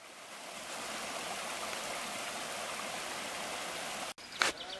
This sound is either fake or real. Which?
real